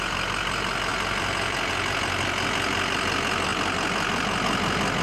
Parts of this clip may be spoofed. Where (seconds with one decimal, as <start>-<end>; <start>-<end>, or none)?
none